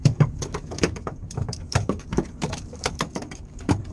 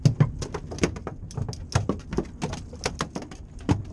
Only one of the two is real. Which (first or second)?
second